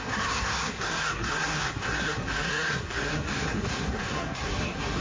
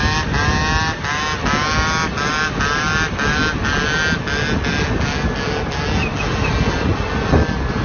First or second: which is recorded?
second